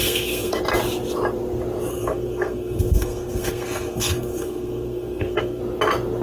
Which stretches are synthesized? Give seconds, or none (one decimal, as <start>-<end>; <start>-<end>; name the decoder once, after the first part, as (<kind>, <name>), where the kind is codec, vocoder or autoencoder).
0.0-0.6 (codec, SNAC); 1.9-5.6